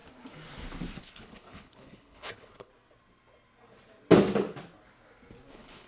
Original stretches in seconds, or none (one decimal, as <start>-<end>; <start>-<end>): 0.0-1.0; 2.7-5.5